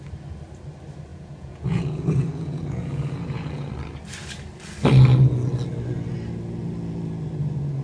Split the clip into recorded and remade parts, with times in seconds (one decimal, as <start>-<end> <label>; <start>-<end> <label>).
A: 0.0-1.1 recorded; 1.1-3.7 remade; 3.7-7.8 recorded